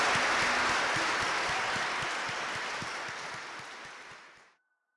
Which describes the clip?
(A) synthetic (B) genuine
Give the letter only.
B